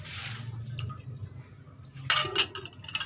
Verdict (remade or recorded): recorded